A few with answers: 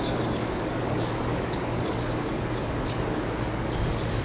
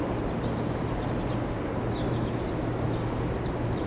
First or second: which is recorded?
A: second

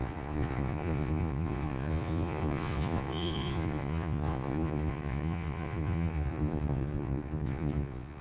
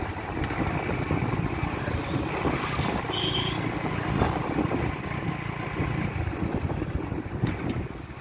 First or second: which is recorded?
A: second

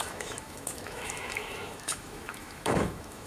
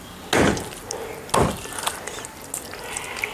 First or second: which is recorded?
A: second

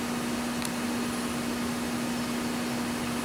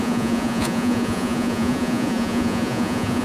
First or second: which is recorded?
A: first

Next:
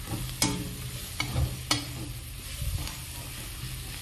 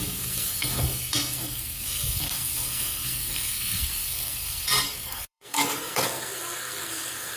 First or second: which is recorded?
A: first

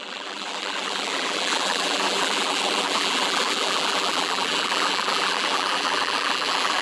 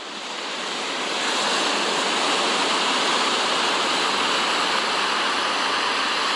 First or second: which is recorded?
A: second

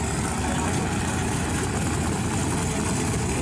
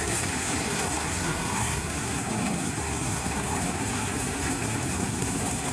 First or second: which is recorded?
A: first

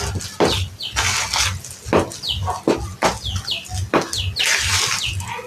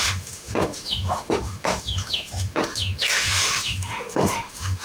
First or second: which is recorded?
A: first